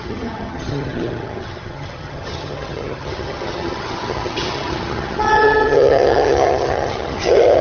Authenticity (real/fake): fake